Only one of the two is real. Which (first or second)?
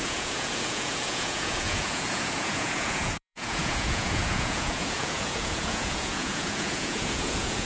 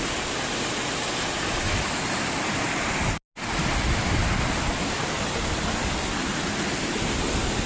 second